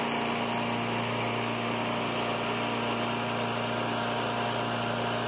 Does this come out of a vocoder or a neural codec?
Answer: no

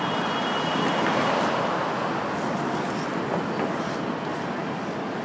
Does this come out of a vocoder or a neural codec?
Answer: no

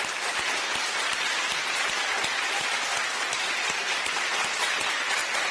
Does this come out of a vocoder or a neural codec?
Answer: yes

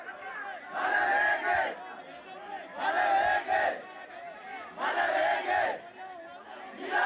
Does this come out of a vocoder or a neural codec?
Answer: no